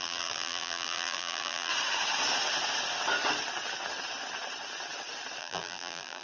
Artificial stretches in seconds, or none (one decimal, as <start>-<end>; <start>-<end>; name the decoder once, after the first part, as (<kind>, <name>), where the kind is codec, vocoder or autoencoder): 0.0-1.7 (vocoder, BigVGAN v2); 5.4-6.2